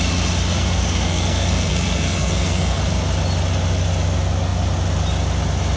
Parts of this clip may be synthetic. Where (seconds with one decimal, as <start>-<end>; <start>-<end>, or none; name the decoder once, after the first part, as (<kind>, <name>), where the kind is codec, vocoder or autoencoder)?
0.5-2.8 (codec, SNAC)